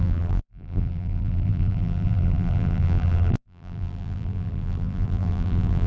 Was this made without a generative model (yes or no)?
no